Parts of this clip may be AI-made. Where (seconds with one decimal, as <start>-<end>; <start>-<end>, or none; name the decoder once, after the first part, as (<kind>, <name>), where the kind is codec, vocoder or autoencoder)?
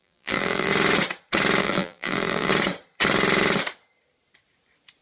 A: 0.0-0.7 (vocoder, BigVGAN v2); 1.6-2.5